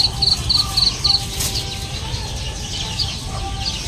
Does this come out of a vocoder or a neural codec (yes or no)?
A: no